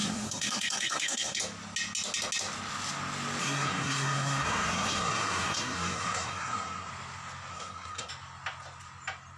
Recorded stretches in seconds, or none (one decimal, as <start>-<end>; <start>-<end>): 1.4-3.4; 6.9-7.5; 8.1-9.4